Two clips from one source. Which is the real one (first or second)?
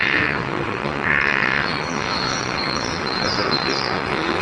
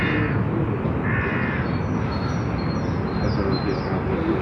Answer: second